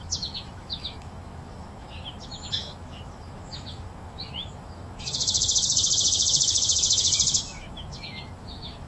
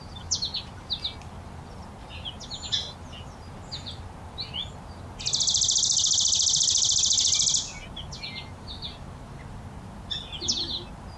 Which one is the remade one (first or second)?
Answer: first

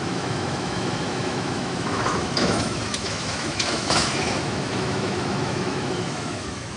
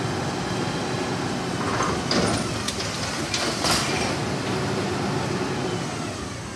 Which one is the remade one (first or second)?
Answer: first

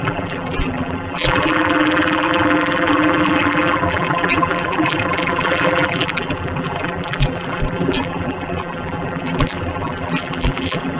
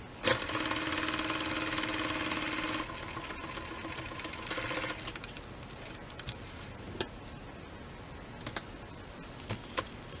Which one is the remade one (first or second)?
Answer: first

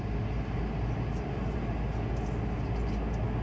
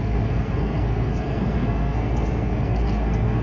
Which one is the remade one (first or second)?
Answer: second